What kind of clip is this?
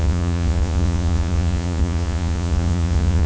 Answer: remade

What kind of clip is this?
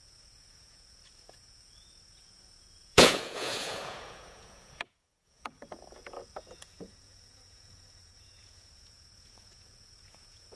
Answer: remade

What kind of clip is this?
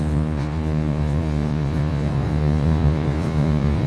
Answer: remade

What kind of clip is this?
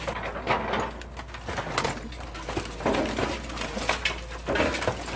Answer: recorded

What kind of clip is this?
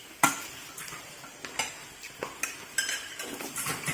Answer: recorded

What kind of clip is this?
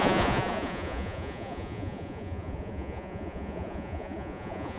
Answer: remade